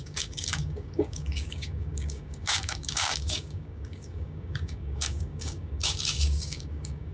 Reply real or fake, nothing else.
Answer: fake